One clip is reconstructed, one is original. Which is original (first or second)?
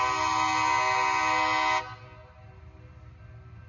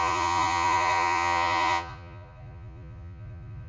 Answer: first